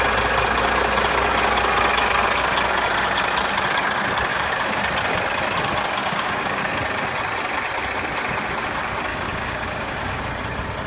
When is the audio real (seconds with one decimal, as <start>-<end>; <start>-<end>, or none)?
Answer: 0.0-4.3; 4.8-6.0; 6.6-9.1; 10.2-10.9